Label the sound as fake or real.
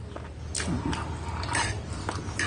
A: real